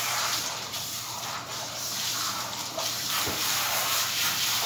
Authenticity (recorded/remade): remade